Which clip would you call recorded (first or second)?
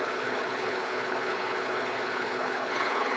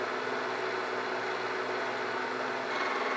second